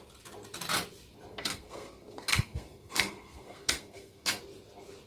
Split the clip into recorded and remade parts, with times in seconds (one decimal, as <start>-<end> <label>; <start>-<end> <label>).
0.0-1.3 recorded; 1.3-4.4 remade; 4.4-5.1 recorded